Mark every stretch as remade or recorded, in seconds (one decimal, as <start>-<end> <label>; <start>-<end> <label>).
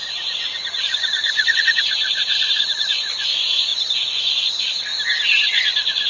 0.0-4.9 remade; 4.9-5.4 recorded; 5.4-6.1 remade